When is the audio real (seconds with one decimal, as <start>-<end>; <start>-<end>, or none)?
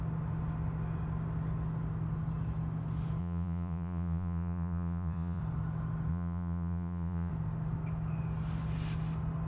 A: 0.0-3.2; 5.4-6.1; 7.3-9.5